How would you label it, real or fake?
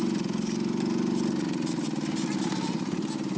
real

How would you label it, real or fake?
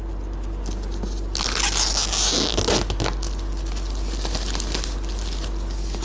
real